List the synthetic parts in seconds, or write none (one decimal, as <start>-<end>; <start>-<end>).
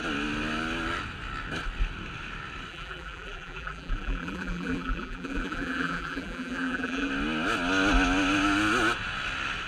2.7-7.1